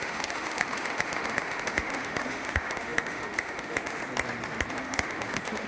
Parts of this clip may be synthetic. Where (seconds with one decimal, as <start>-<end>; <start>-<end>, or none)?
0.0-4.0; 4.7-5.7